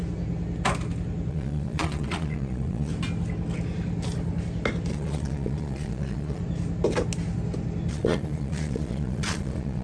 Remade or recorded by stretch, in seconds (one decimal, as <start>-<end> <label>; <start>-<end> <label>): 0.0-1.3 recorded; 1.3-2.9 remade; 2.9-4.9 recorded; 4.9-6.4 remade; 6.4-7.9 recorded; 7.9-9.8 remade